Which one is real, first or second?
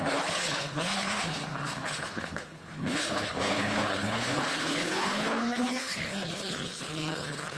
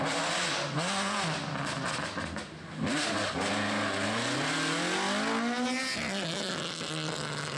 second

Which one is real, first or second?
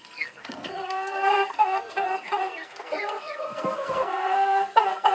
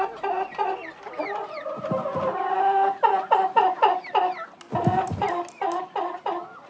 second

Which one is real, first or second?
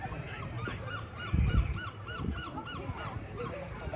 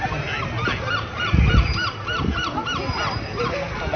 second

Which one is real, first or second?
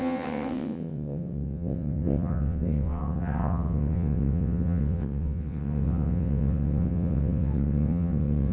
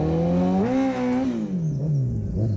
second